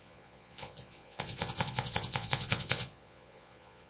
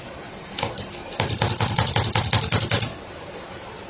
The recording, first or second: second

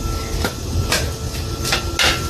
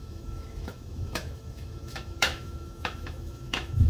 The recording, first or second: first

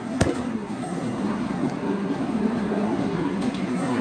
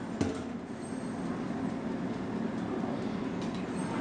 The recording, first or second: second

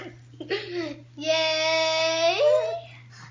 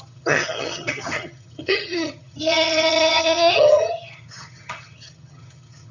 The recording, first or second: first